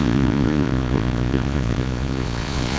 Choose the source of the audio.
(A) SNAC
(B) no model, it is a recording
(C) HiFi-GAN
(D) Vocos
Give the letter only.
D